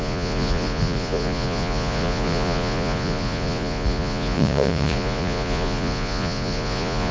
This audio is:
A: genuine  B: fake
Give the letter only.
B